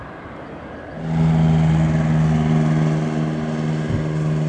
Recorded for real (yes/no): yes